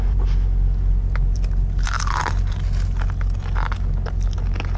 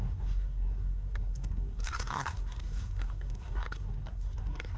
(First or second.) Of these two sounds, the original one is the first